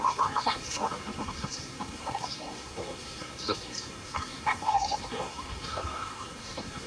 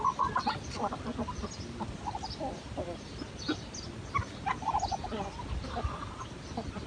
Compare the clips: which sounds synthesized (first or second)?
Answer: first